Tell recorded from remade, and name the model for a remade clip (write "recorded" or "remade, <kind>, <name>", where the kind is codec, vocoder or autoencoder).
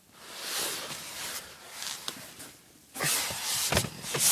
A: recorded